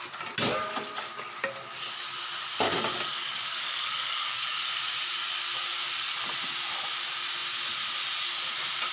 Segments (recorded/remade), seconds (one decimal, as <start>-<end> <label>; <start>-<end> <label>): 0.0-3.1 recorded; 3.1-4.5 remade; 4.5-8.9 recorded